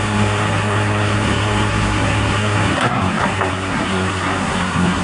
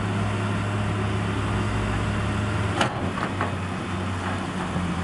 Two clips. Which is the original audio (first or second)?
second